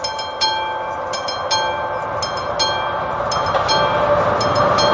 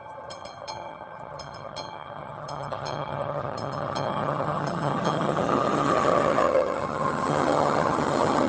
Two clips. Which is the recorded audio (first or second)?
first